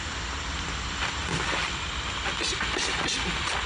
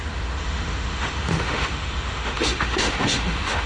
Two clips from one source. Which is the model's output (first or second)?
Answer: second